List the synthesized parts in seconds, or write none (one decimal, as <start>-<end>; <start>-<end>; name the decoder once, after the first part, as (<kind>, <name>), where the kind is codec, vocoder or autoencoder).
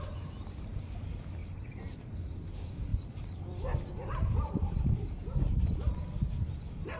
none